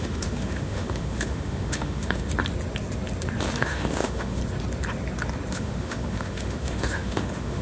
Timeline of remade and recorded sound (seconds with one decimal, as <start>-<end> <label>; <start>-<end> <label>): 0.0-2.3 remade; 2.3-3.6 recorded; 3.6-4.4 remade; 4.4-5.5 recorded; 5.5-7.6 remade